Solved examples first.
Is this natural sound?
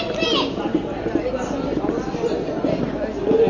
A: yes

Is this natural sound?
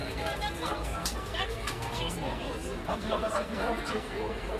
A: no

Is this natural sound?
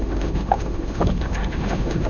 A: no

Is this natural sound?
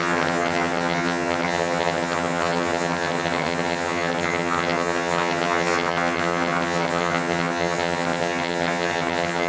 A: no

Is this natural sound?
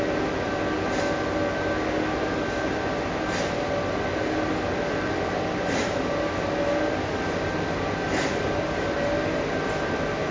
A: yes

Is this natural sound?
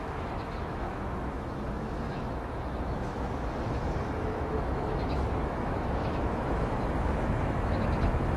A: no